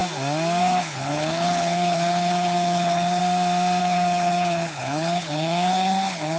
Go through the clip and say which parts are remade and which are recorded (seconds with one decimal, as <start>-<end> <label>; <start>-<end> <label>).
0.0-0.6 recorded; 0.6-3.2 remade; 3.2-3.8 recorded; 3.8-6.4 remade